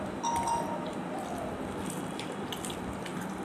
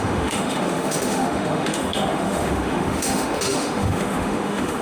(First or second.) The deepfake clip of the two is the second